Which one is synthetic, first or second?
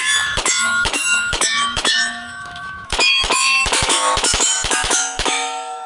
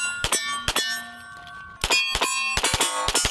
first